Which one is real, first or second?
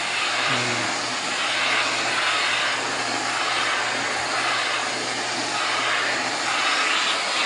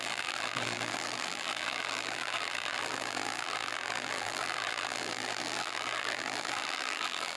first